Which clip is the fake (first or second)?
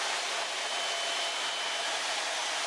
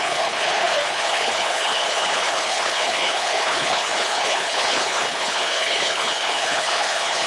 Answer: second